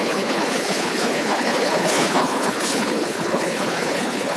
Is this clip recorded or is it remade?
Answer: remade